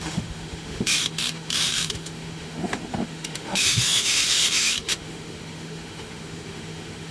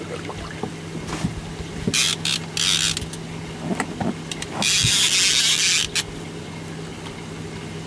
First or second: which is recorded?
second